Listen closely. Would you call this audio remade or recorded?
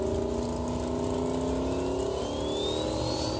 recorded